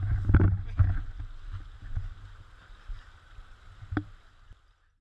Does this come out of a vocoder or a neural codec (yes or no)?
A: no